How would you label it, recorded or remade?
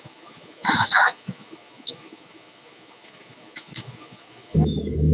remade